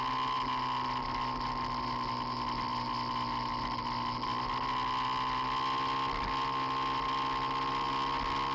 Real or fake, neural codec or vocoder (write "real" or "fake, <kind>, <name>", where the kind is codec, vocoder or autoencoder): real